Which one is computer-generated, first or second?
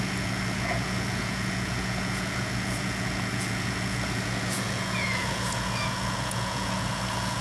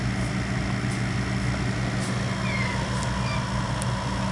first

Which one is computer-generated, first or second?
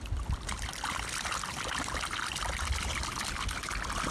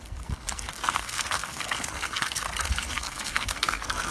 second